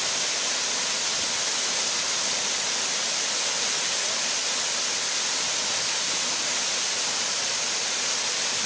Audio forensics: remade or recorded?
recorded